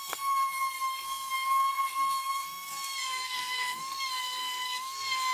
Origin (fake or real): fake